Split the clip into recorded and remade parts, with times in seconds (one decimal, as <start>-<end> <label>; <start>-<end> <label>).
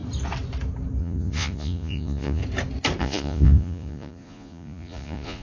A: 0.0-1.0 recorded; 1.0-2.4 remade; 2.4-3.0 recorded; 3.0-5.4 remade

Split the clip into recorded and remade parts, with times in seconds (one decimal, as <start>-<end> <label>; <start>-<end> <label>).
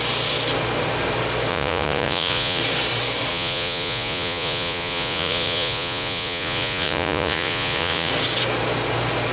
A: 0.0-1.5 recorded; 1.5-2.6 remade; 2.6-3.3 recorded; 3.3-8.1 remade; 8.1-9.3 recorded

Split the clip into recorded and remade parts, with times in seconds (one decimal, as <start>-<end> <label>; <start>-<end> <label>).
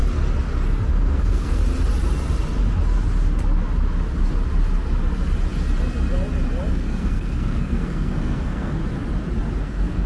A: 0.0-0.9 recorded; 0.9-1.6 remade; 1.6-6.7 recorded; 6.7-8.8 remade; 8.8-9.6 recorded; 9.6-10.1 remade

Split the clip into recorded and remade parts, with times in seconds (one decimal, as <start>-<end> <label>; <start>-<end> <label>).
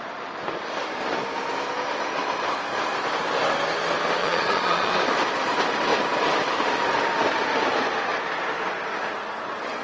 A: 0.0-4.2 recorded; 4.2-4.9 remade; 4.9-9.8 recorded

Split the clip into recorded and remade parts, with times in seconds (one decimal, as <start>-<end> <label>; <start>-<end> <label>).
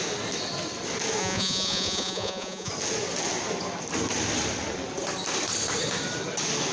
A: 0.0-1.2 recorded; 1.2-2.7 remade; 2.7-6.7 recorded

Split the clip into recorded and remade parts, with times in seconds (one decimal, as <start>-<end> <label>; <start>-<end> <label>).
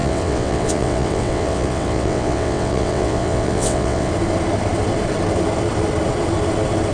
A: 0.0-4.1 remade; 4.1-6.9 recorded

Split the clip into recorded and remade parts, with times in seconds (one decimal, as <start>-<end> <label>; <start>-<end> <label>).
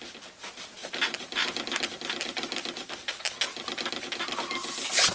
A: 0.0-5.1 recorded